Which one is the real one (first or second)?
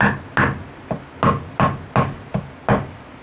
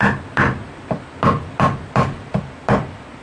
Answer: first